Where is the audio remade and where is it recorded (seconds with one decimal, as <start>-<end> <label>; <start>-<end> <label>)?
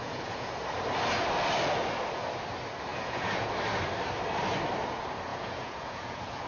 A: 0.0-0.5 remade; 0.5-2.9 recorded; 2.9-3.5 remade; 3.5-5.3 recorded; 5.3-6.5 remade